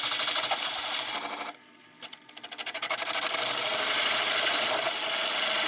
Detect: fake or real real